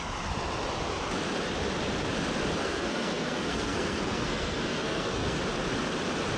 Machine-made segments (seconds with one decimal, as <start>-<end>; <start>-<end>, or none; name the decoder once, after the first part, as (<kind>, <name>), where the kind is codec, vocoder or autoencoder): 2.6-5.4 (codec, SNAC)